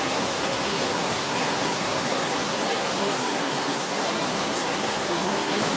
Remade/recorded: remade